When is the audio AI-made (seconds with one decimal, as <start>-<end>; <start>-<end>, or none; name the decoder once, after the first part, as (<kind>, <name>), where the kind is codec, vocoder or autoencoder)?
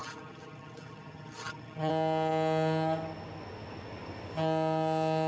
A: 0.0-1.9 (vocoder, HiFi-GAN)